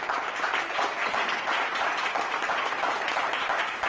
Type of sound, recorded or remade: remade